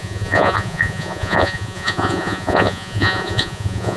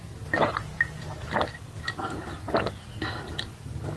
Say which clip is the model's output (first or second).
first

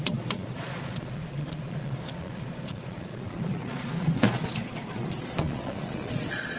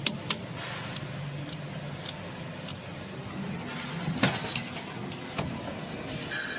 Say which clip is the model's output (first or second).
first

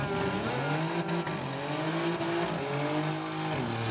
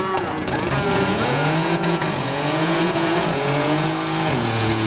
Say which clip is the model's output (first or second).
second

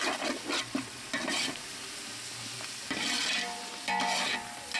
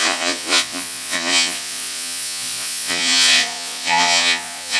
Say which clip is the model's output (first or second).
second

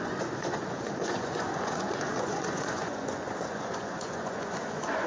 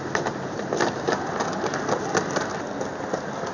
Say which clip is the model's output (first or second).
first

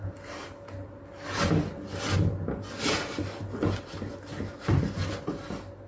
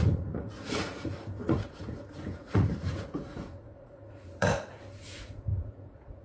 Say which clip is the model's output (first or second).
second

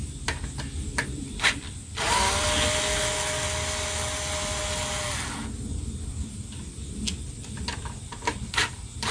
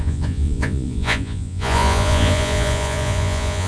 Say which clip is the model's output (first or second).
second